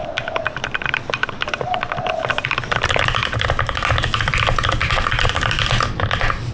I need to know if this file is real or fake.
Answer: real